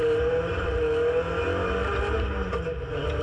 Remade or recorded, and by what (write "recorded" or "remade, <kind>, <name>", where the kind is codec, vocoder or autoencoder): recorded